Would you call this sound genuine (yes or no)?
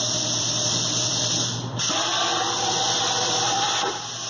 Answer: no